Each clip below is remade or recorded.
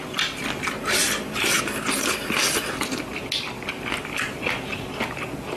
recorded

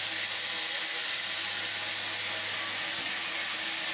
recorded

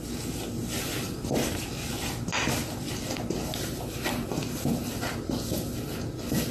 recorded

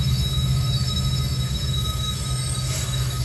remade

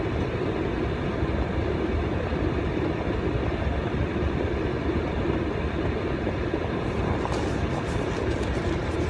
recorded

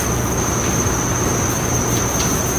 recorded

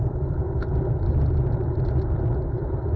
recorded